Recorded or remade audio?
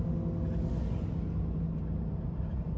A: recorded